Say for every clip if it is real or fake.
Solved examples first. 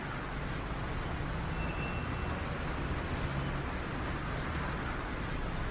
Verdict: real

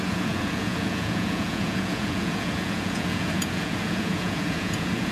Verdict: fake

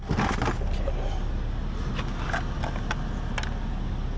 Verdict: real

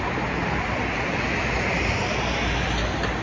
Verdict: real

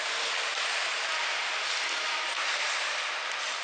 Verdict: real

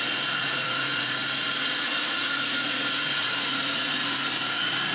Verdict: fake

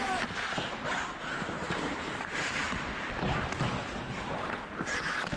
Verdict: real